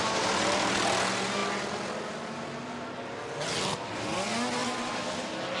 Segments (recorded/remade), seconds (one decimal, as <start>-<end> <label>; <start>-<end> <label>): 0.0-5.6 recorded